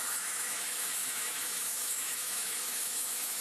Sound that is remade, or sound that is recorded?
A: remade